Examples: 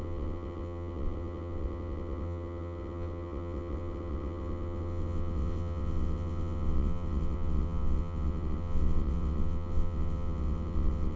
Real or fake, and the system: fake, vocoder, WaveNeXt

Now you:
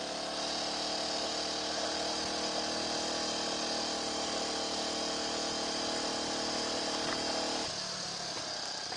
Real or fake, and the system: real